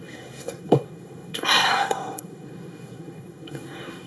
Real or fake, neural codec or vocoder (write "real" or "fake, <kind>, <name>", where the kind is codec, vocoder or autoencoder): fake, codec, SNAC